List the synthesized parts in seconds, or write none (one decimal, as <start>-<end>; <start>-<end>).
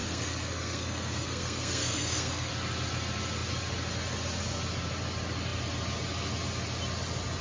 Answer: 0.0-2.5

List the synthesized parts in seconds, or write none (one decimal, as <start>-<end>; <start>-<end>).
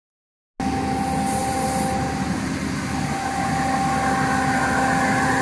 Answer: none